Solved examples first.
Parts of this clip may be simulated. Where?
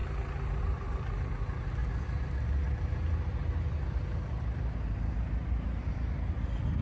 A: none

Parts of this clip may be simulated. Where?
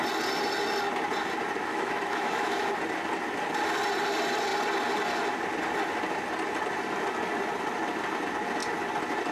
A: 1.7-2.7 (autoencoder, DAC-VAE)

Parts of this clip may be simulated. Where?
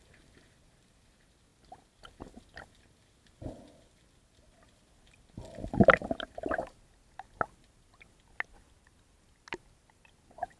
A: none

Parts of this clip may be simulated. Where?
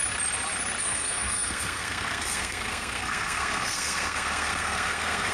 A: 0.8-5.3 (codec, SNAC)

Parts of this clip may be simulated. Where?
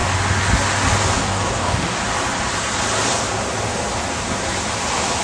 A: 1.2-2.0 (codec, DAC)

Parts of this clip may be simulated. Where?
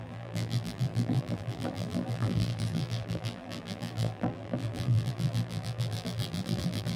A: 0.0-7.0 (vocoder, BigVGAN v2)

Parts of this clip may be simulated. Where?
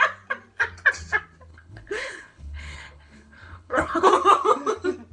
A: 1.5-4.1 (codec, HILCodec)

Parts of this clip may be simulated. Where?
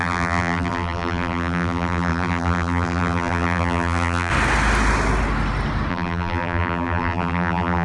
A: 0.0-4.3 (vocoder, BigVGAN v2); 5.9-7.8